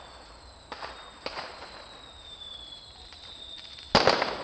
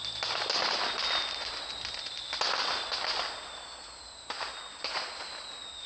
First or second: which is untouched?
second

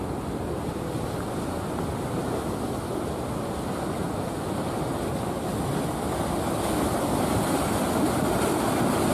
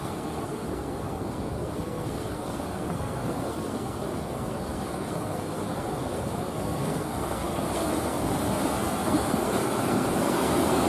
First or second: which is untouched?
first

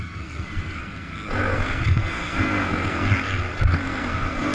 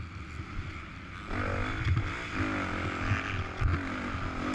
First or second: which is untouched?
second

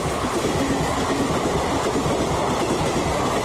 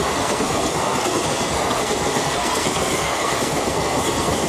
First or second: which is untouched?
first